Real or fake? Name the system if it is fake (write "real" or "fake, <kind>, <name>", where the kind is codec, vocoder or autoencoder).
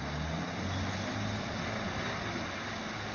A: real